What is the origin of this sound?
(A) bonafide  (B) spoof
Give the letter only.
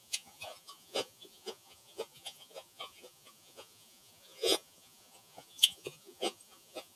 B